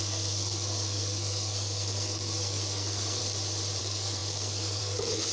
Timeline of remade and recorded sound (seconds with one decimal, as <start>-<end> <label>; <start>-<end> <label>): 0.0-3.2 remade; 3.2-3.8 recorded; 3.8-5.3 remade